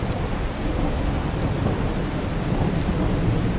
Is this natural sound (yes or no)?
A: yes